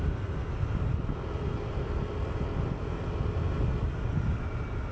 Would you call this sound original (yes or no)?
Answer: yes